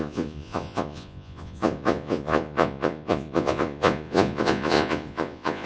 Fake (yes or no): yes